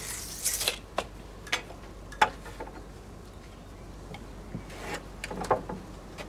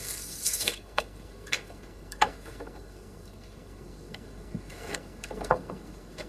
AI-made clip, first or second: second